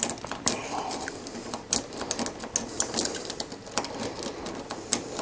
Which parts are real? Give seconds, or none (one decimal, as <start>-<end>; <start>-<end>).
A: 0.0-5.2